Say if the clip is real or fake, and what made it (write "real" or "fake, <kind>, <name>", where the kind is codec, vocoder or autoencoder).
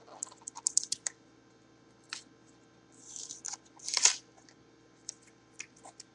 fake, vocoder, BigVGAN v2